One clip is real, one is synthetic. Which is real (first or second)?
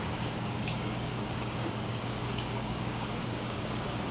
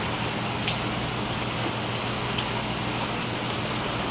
second